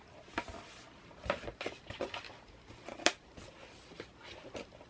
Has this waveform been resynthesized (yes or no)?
no